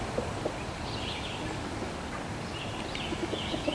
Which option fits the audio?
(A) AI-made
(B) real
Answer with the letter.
B